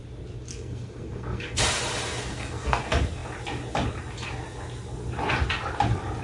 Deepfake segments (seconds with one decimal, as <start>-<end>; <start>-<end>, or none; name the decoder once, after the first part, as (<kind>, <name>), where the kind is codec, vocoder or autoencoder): 0.5-1.6 (codec, SNAC); 2.3-2.8